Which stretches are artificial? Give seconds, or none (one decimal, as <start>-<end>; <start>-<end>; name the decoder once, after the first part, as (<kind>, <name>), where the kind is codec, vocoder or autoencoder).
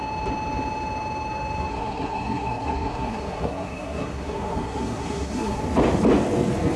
1.7-5.6 (codec, SNAC)